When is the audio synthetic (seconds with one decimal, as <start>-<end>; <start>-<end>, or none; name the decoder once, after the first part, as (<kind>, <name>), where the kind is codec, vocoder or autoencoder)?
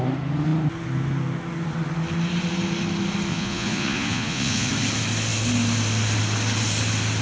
3.3-4.7 (vocoder, Vocos)